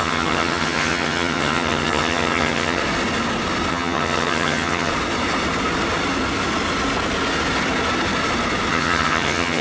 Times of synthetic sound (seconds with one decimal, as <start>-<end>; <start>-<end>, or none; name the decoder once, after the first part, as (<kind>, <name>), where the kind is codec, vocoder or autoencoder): 0.0-2.8 (vocoder, HiFi-GAN); 3.7-4.9; 8.7-9.6